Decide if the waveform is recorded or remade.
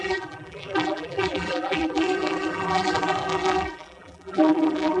remade